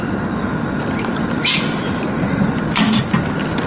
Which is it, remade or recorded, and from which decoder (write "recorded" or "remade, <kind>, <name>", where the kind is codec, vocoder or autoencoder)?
recorded